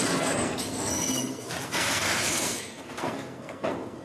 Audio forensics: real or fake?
fake